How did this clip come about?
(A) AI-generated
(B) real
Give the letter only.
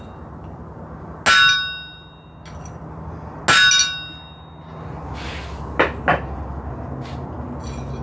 B